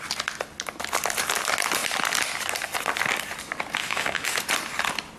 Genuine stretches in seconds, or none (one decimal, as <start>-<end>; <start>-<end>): 0.0-3.8; 4.4-5.2